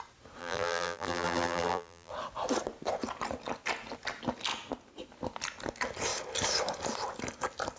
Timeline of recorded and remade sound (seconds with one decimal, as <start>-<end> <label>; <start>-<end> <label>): 0.0-0.4 recorded; 0.4-2.1 remade; 2.1-7.8 recorded